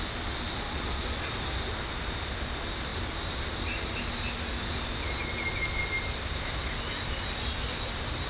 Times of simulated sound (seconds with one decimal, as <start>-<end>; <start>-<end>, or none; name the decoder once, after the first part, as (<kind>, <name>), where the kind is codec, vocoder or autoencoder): none